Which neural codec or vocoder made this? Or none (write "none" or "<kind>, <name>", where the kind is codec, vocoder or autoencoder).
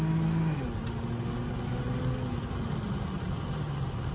none